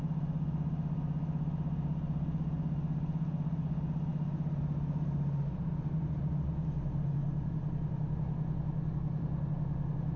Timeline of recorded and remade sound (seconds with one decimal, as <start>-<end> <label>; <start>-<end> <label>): 0.0-10.2 recorded

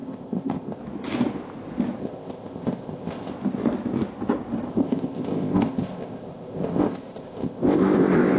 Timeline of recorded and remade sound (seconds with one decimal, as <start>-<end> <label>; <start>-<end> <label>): 0.0-0.8 remade; 0.8-2.0 recorded; 2.0-3.3 remade; 3.3-4.7 recorded; 4.7-8.4 remade